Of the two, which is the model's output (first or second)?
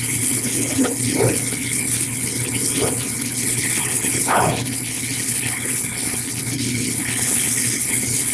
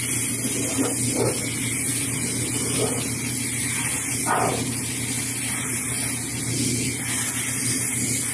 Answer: first